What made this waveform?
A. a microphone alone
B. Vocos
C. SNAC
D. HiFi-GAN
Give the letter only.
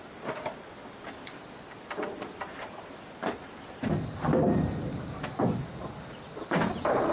A